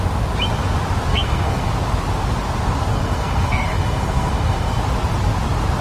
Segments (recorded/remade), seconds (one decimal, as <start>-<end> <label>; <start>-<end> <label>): 0.0-1.1 recorded; 1.1-1.7 remade; 1.7-2.9 recorded; 2.9-4.8 remade; 4.8-5.8 recorded